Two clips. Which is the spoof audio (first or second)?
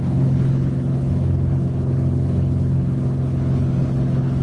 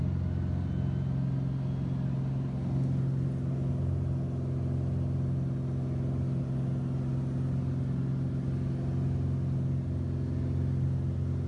first